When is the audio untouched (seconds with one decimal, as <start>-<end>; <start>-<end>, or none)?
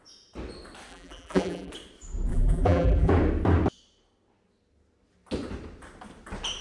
0.0-0.9; 1.7-2.3; 3.1-6.6